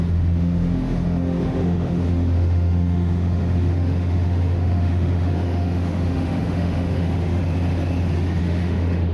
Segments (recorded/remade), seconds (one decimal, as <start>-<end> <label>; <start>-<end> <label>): 0.0-7.4 remade; 7.4-8.4 recorded; 8.4-9.1 remade